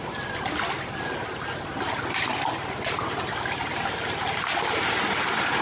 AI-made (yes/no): no